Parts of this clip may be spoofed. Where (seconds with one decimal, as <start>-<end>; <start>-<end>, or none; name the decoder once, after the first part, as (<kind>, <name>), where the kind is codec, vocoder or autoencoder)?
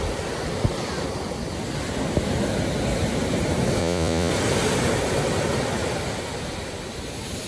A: 3.8-4.3 (vocoder, Vocos)